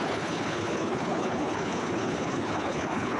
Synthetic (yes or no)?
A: yes